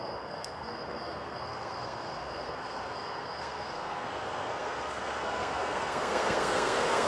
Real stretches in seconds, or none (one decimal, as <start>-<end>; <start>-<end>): none